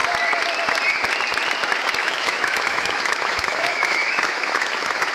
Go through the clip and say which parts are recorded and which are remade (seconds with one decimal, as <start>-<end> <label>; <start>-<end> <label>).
0.0-2.0 recorded; 2.0-5.1 remade